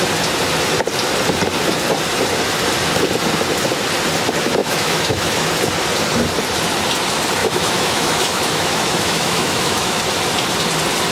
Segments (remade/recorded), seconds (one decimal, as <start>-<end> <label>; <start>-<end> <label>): 0.0-4.6 recorded; 4.6-5.5 remade; 5.5-7.4 recorded; 7.4-10.0 remade; 10.0-11.1 recorded